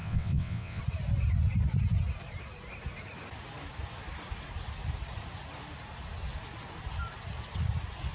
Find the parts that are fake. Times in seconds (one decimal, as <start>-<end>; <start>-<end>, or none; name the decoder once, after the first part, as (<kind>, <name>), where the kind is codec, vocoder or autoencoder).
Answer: 0.0-0.8 (vocoder, WaveNeXt)

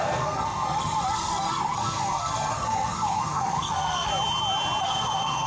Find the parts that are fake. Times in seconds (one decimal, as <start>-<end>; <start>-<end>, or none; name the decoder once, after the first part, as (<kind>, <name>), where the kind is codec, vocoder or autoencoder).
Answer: 0.0-4.1 (codec, SNAC); 4.8-5.5

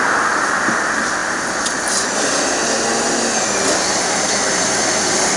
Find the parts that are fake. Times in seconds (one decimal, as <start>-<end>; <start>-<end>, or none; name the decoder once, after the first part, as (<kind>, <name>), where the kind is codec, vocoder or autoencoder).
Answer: none

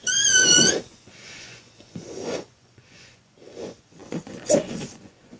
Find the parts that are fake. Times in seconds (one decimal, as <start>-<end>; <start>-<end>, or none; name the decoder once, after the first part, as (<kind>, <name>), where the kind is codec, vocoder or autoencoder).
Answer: 0.0-5.4 (vocoder, Vocos)

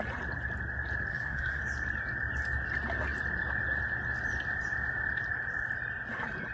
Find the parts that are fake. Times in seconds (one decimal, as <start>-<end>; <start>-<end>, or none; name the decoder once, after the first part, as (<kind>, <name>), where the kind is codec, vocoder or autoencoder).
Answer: 1.1-1.6 (codec, SNAC)

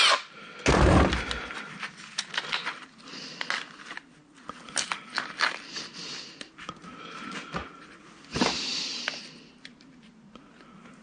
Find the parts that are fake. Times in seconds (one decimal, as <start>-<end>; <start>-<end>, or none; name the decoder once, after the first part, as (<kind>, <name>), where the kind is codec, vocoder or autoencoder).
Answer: none

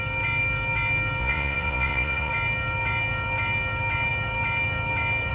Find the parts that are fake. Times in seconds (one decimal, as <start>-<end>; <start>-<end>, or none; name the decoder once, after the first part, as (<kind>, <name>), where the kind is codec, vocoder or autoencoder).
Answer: 1.2-2.3 (vocoder, Vocos)